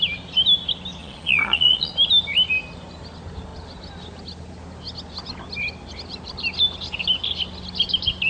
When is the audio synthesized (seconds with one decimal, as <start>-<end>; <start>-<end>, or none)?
1.0-1.9